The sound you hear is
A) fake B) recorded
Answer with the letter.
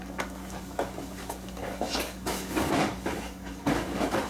A